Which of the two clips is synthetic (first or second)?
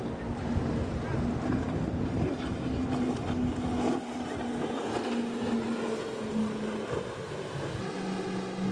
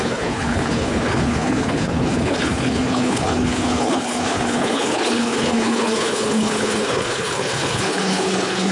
second